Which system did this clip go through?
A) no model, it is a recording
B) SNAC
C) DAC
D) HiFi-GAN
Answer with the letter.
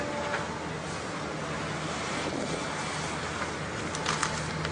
A